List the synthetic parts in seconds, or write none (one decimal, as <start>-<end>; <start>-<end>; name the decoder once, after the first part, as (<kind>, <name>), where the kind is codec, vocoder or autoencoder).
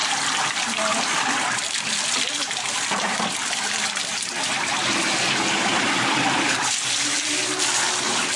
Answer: 0.0-8.4 (vocoder, BigVGAN v2)